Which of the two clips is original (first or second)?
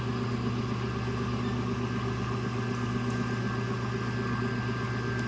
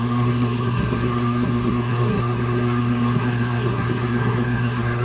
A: first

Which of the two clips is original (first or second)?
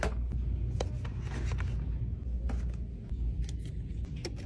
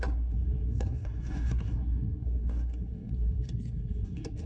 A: first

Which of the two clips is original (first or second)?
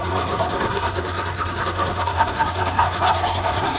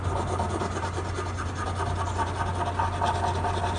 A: second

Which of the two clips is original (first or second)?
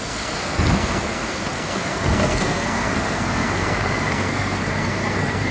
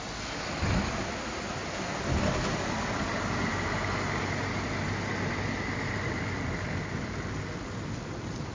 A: second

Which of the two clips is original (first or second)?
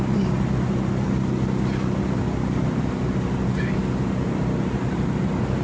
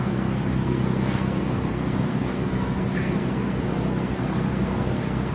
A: first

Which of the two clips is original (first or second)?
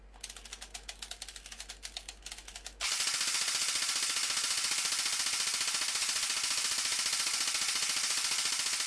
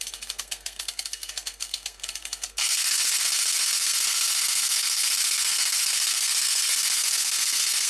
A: first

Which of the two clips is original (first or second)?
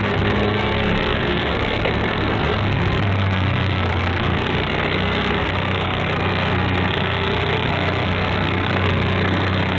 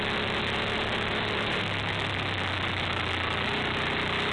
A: second